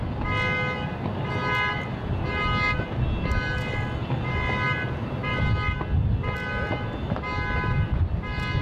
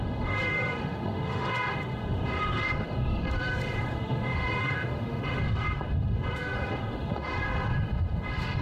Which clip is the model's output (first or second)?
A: second